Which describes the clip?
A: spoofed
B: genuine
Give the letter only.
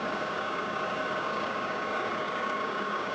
A